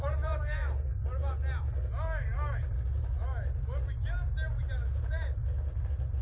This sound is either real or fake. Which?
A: real